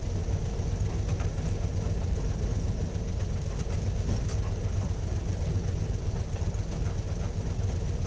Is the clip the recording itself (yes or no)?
yes